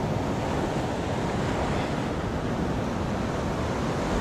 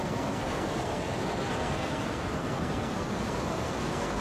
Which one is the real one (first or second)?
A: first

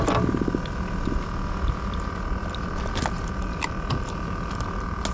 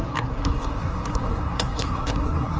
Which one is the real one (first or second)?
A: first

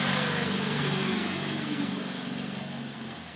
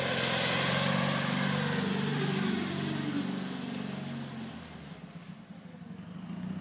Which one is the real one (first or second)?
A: second